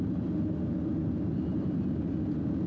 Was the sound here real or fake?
real